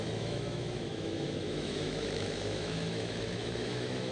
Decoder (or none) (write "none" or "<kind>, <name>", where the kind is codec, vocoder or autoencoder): autoencoder, DAC-VAE